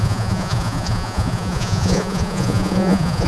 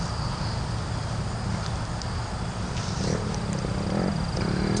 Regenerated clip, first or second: first